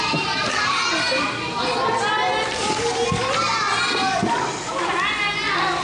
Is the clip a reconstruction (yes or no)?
no